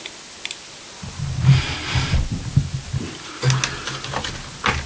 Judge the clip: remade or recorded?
recorded